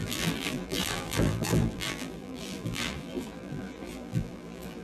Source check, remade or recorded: remade